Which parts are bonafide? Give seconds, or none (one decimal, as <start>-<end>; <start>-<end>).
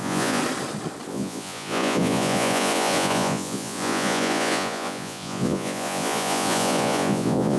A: 0.4-1.1